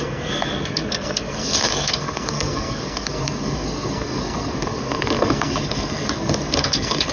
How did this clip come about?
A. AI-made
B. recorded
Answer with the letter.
A